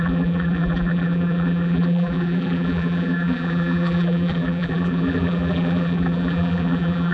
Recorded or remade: remade